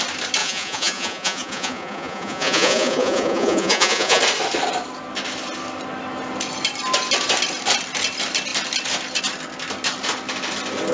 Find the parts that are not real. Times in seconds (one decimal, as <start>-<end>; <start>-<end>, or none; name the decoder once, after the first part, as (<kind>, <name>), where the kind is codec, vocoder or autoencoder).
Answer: 0.4-4.2 (vocoder, Vocos)